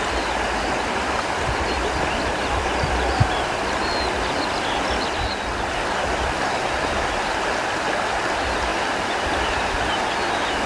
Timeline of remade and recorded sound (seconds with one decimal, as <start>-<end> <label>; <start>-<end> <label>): 0.0-10.7 recorded